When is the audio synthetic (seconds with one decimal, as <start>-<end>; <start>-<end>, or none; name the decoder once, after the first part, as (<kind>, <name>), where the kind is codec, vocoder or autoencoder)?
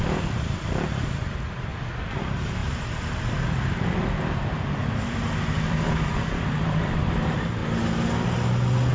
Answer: 0.0-1.7 (vocoder, BigVGAN v2); 2.2-7.6